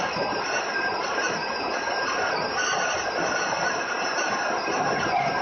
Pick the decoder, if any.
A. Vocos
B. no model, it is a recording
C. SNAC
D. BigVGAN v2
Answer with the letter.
B